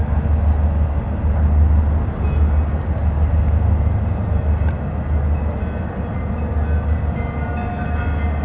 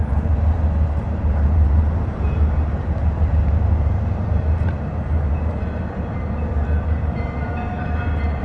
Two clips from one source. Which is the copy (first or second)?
second